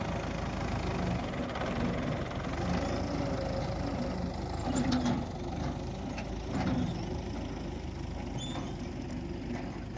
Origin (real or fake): real